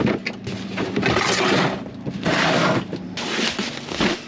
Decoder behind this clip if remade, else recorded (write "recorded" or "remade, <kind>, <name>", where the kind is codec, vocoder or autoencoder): recorded